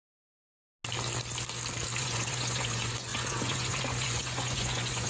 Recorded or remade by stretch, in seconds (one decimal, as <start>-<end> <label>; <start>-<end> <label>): 0.0-0.4 remade; 0.4-2.0 recorded; 2.0-5.1 remade